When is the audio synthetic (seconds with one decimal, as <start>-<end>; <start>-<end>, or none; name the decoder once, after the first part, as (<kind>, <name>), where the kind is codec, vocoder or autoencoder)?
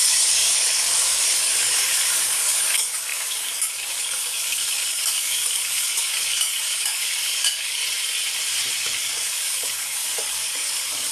0.0-7.8 (codec, DAC); 8.7-11.1